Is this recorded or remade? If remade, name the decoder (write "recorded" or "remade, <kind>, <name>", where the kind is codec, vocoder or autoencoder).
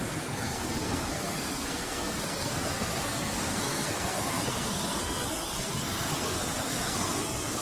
remade, codec, SNAC